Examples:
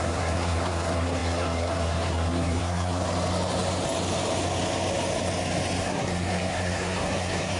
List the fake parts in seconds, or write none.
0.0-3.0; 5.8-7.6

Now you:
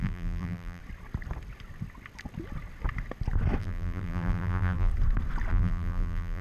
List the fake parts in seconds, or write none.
0.0-0.8; 3.6-4.9; 5.5-6.4

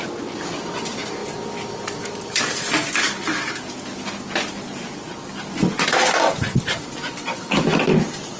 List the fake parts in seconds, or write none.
none